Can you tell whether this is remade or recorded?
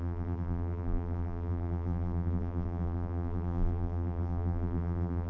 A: remade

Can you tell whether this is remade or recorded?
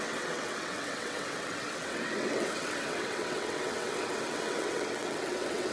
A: remade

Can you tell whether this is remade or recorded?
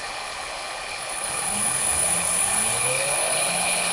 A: remade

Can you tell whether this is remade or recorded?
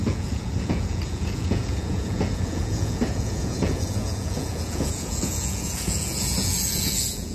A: remade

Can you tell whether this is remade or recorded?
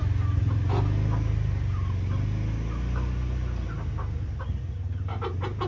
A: recorded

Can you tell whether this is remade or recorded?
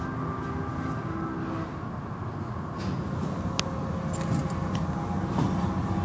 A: recorded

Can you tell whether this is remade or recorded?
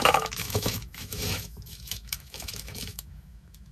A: remade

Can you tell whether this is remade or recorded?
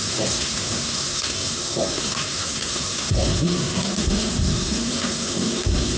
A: remade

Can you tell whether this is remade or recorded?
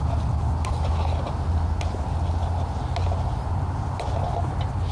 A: recorded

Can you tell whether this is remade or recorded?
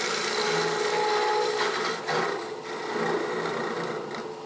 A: recorded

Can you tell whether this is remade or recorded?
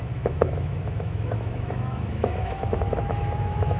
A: remade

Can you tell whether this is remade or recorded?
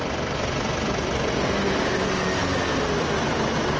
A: recorded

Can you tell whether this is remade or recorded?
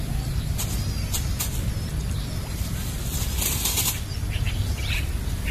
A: recorded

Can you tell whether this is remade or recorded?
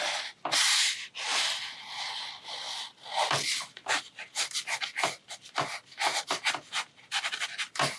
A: recorded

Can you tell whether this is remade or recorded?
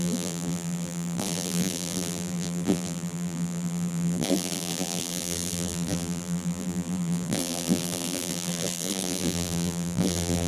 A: remade